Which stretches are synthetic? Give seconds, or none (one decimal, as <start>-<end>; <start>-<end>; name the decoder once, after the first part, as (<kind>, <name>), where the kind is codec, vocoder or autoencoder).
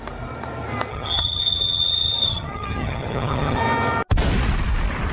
0.9-3.6 (vocoder, HiFi-GAN)